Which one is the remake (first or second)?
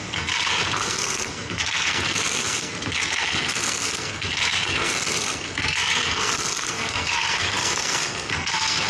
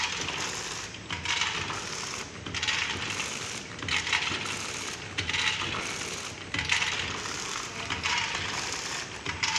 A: first